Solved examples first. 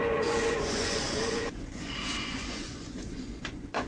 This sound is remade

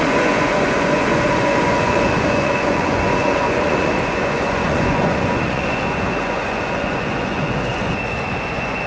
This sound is remade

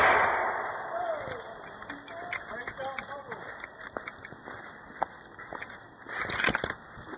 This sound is recorded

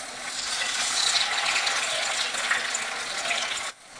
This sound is remade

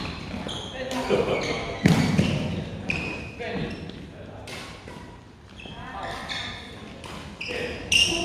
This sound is recorded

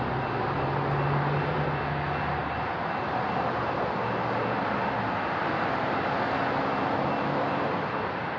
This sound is recorded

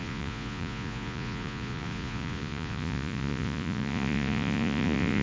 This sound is remade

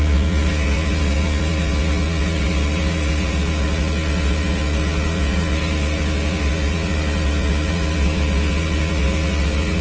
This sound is remade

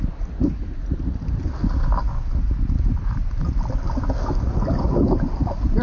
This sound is recorded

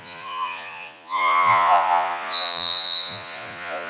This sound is remade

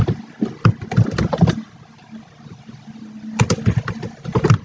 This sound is recorded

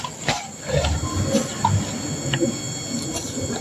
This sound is recorded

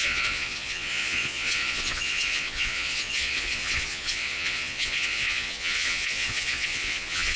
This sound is remade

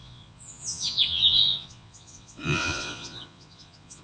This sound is remade